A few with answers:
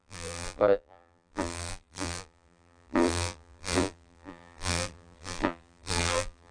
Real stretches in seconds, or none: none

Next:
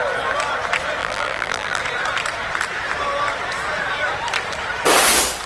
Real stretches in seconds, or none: 0.0-1.0; 1.8-5.5

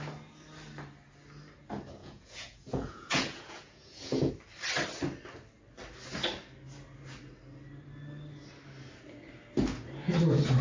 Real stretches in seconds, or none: 0.0-2.0; 4.3-10.6

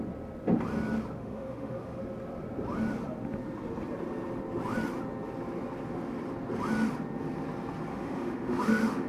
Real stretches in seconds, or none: 0.0-1.2; 2.0-7.9

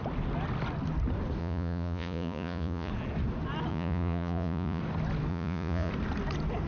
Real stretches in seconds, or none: 0.0-1.4; 2.9-3.7; 4.8-5.3; 5.9-6.7